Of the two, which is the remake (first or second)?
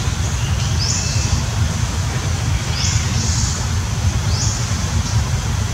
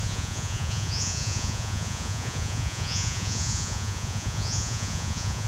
second